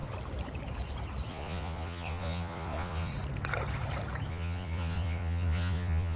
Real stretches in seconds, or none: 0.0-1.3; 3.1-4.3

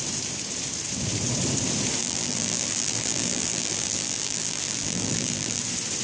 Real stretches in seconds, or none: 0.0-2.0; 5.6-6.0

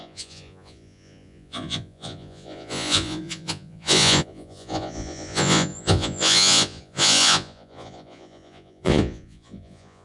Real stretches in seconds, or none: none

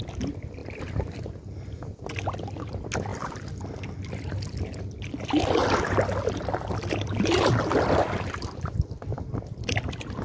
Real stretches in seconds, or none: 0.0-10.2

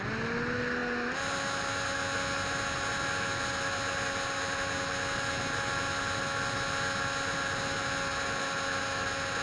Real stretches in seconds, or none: 0.0-9.4

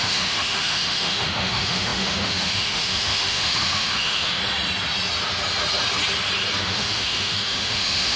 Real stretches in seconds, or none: 4.4-6.6